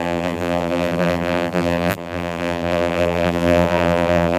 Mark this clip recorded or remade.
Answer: remade